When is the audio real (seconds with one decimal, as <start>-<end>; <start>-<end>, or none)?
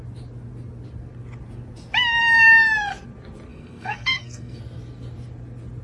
0.0-3.5; 4.6-5.8